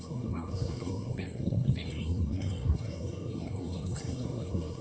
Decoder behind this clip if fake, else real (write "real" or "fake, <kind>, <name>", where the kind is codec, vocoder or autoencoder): fake, codec, SNAC